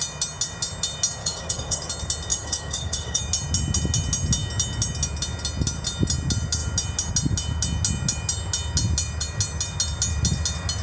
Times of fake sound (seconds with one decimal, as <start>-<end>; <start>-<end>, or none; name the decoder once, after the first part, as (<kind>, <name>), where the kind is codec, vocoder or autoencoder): 1.2-1.9 (codec, DAC); 2.3-3.2